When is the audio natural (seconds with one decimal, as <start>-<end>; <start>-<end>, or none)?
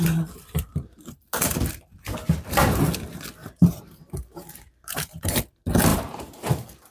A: 0.0-0.7; 1.2-3.4; 5.4-5.9